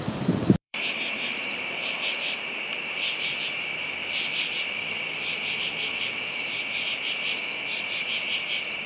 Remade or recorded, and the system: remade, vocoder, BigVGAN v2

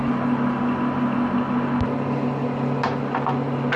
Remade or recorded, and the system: recorded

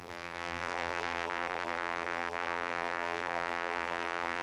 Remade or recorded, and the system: remade, vocoder, BigVGAN v2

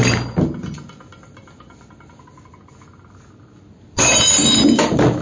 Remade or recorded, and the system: recorded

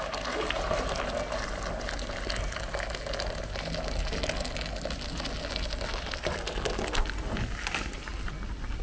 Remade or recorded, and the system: recorded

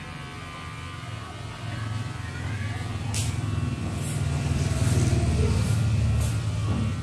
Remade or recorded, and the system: remade, vocoder, BigVGAN v2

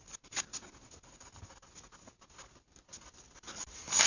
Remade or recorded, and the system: recorded